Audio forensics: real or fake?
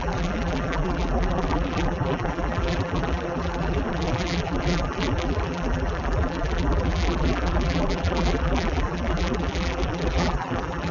fake